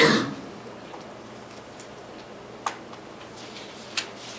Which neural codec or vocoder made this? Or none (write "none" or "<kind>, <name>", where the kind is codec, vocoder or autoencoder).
none